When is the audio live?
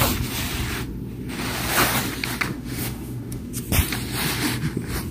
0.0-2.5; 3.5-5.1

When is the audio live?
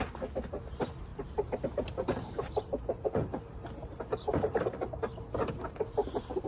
0.0-1.1; 5.0-6.0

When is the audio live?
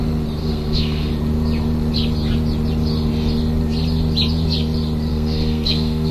0.0-0.4; 1.1-5.1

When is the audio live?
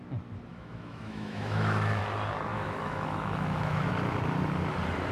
0.0-0.5; 2.0-2.5; 3.9-5.1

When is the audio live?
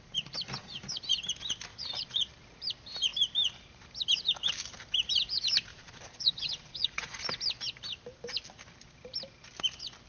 0.0-1.7; 2.3-5.7; 7.2-10.1